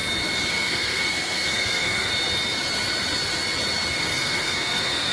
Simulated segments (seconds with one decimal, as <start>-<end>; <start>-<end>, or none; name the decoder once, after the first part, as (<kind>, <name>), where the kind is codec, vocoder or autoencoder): 0.5-2.1 (codec, SNAC); 4.0-5.1